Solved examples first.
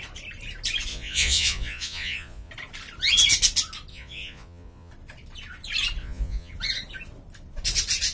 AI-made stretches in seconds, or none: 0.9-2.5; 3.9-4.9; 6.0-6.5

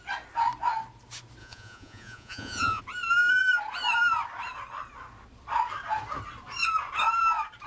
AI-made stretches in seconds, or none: 1.4-2.8

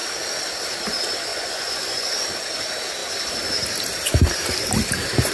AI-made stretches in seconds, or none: 1.3-2.3

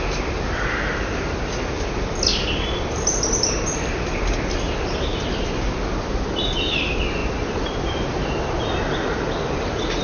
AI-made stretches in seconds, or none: none